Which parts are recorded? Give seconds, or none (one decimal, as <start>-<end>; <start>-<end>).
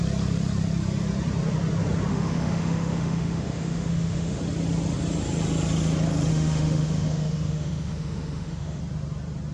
0.0-2.1; 4.4-6.3; 8.8-9.5